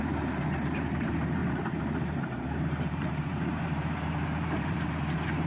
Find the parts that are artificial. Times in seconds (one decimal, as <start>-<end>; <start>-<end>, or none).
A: 0.0-5.5